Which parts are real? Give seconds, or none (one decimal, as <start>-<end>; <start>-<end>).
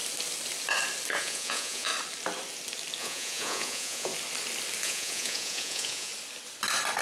0.0-1.2; 1.9-3.0; 4.1-4.8; 6.1-7.0